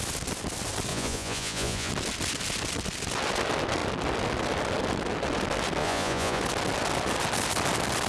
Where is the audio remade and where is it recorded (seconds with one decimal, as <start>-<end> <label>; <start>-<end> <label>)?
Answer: 0.0-0.9 recorded; 0.9-1.9 remade; 1.9-5.8 recorded; 5.8-6.4 remade; 6.4-8.1 recorded